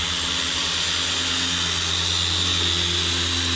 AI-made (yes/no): no